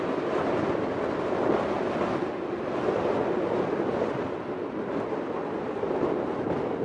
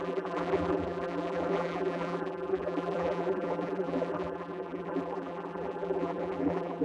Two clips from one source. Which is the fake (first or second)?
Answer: second